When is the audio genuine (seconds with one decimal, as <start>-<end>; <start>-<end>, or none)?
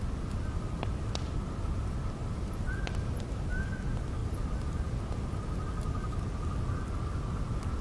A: 0.0-7.8